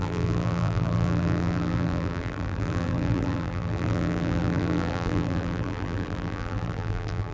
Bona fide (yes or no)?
no